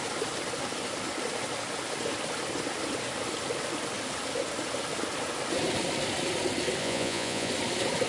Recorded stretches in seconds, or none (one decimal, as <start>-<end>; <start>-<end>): 0.0-6.8; 7.5-8.1